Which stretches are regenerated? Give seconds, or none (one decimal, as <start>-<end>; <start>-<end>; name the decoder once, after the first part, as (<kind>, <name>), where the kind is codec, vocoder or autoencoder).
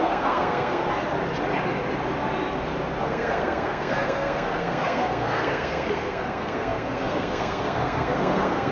0.0-0.8 (codec, SNAC); 3.0-8.7